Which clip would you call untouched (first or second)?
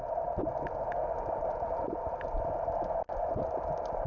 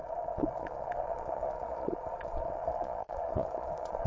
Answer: first